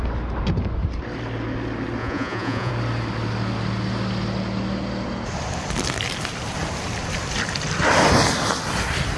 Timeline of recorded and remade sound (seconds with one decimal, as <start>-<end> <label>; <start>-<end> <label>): 0.0-2.0 recorded; 2.0-2.7 remade; 2.7-9.2 recorded